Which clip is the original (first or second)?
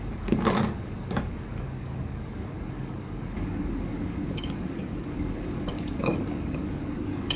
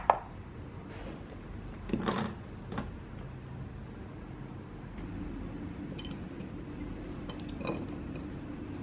second